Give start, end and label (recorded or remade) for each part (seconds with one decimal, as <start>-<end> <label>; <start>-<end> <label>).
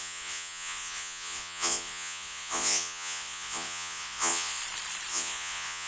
0.0-4.6 remade; 4.6-5.1 recorded; 5.1-5.9 remade